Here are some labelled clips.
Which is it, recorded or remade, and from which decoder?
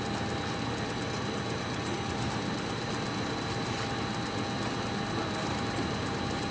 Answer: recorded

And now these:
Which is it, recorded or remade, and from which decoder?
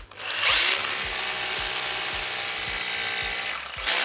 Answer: recorded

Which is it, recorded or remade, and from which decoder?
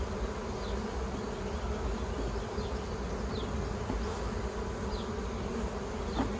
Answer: recorded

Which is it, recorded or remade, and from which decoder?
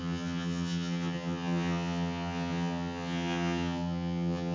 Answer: remade, vocoder, HiFi-GAN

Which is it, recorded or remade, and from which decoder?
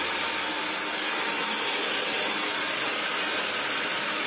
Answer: recorded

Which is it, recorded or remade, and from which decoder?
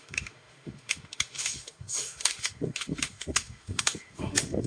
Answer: remade, autoencoder, DAC-VAE